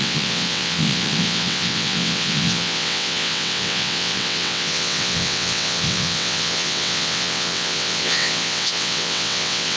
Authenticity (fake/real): fake